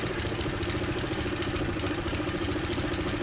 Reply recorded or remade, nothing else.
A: remade